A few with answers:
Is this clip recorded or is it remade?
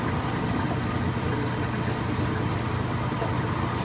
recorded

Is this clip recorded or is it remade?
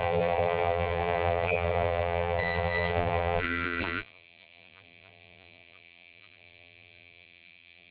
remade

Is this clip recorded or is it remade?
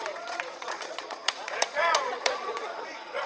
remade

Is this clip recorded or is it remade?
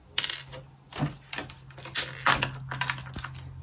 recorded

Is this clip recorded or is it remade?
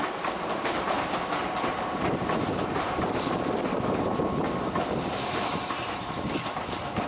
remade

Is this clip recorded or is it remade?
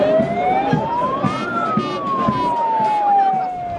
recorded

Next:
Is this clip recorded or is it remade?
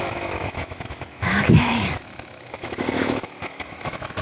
remade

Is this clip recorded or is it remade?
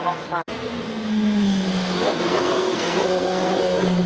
remade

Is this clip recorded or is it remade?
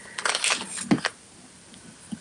recorded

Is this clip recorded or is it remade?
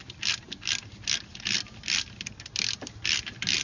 recorded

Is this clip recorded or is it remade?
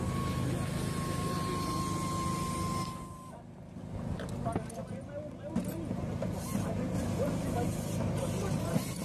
recorded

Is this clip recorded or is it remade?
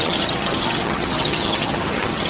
remade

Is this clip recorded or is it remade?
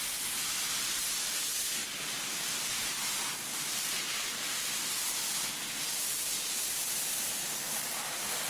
recorded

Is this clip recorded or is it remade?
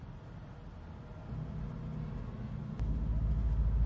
recorded